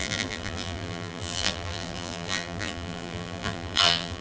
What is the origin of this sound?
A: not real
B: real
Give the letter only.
A